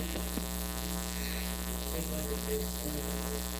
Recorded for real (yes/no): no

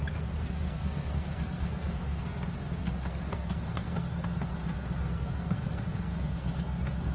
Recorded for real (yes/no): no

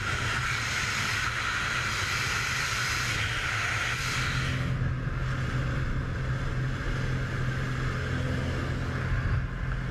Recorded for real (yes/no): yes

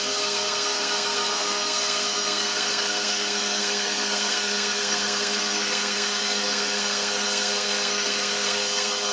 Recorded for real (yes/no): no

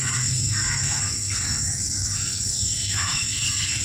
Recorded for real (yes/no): no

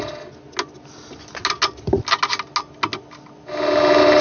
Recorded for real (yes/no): yes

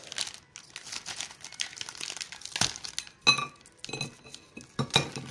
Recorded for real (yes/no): yes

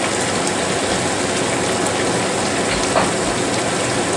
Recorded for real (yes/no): yes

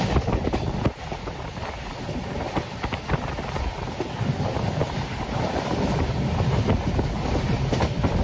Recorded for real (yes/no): yes